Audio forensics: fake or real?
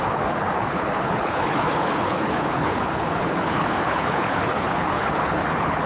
fake